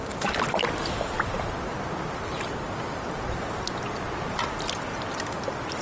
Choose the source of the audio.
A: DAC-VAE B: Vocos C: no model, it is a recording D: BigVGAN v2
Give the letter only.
C